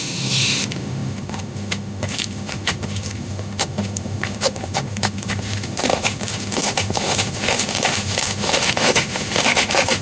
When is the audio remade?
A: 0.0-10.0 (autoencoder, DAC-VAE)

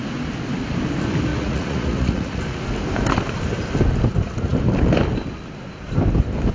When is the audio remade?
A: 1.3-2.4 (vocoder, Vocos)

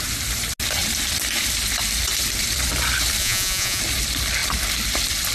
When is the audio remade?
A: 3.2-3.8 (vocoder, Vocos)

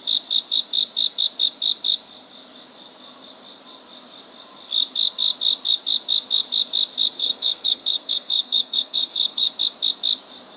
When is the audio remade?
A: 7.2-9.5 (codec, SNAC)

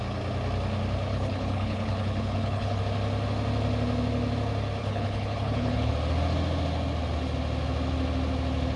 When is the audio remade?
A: 1.1-2.8 (codec, HILCodec); 4.8-5.9

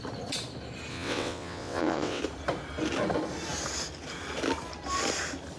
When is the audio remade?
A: 0.9-2.2 (vocoder, WaveNeXt)